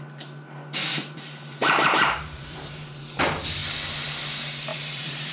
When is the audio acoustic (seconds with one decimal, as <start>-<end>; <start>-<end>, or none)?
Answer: 0.0-0.9; 3.2-4.7